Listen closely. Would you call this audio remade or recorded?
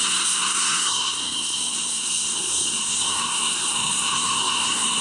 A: remade